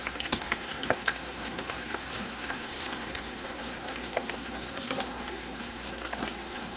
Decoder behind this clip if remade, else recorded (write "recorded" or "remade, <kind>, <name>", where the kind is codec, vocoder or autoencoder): remade, codec, SNAC